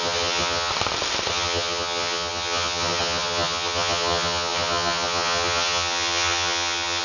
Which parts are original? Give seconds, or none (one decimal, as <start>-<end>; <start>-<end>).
0.7-1.3

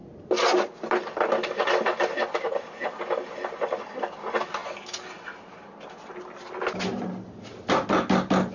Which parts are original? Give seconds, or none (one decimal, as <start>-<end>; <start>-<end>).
0.0-8.5

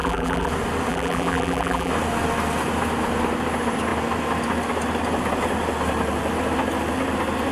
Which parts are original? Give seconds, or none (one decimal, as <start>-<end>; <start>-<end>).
0.5-0.9; 1.9-7.5

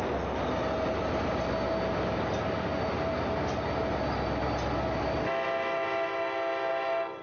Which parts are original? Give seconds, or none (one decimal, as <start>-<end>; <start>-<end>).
0.0-7.2

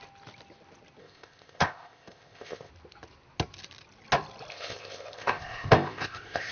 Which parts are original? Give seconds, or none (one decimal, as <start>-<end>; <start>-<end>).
0.0-1.0; 2.7-4.5

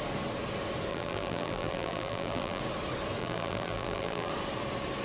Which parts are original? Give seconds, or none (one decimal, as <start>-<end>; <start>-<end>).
0.0-0.9; 2.6-3.2; 4.3-5.0

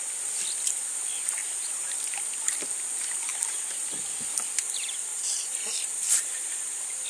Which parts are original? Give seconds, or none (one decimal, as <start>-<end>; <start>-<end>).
0.0-1.4; 2.0-3.3; 4.0-5.1; 6.2-7.1

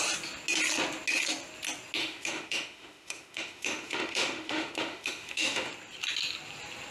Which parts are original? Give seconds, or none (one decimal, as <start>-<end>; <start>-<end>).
0.0-2.0; 5.7-6.9